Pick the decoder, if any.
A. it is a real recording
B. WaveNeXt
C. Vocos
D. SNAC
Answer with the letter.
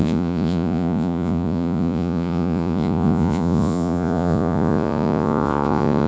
C